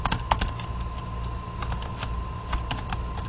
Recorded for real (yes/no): yes